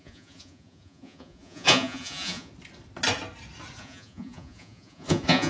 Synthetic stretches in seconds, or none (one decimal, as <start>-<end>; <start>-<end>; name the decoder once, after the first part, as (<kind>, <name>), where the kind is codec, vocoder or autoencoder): 0.0-2.5 (vocoder, Vocos); 3.8-5.5